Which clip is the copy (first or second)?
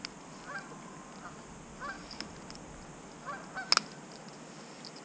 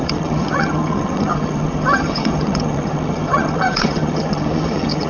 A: second